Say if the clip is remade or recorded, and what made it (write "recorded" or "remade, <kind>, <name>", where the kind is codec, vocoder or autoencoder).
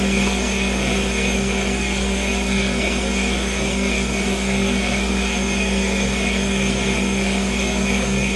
remade, codec, SNAC